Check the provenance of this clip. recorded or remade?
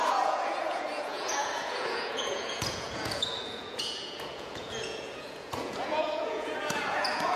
remade